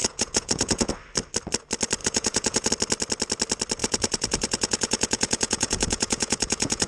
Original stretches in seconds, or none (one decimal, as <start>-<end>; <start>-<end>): 0.9-2.0; 2.7-3.8